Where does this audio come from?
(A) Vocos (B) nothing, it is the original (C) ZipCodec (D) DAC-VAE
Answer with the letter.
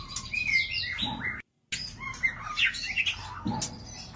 B